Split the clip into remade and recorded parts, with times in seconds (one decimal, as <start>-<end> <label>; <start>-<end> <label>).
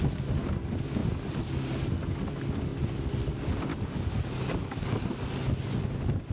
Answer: 0.0-3.7 recorded; 3.7-5.4 remade; 5.4-6.3 recorded